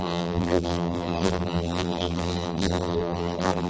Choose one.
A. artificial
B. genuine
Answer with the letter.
A